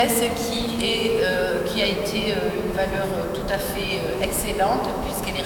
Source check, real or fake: fake